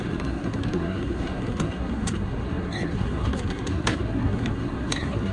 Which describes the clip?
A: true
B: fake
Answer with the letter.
B